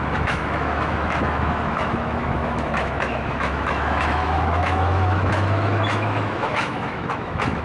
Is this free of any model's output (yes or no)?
no